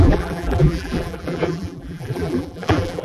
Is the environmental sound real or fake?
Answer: fake